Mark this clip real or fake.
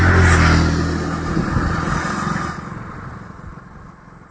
real